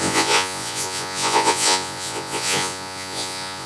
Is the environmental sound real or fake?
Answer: fake